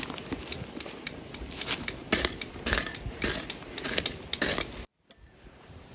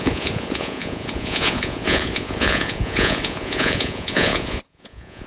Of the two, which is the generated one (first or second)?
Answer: second